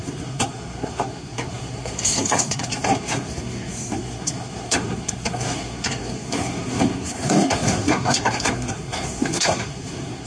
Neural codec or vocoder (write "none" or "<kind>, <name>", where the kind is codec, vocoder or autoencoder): codec, SNAC